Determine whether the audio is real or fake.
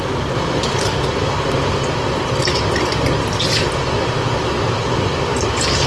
real